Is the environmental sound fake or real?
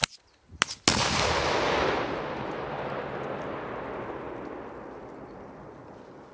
real